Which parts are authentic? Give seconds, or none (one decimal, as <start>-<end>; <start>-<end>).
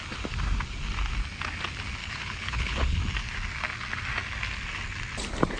0.0-2.0; 3.0-5.6